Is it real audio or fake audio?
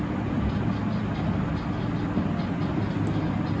real